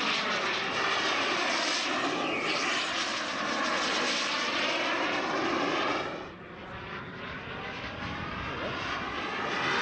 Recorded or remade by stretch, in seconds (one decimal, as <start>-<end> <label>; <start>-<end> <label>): 0.0-9.8 recorded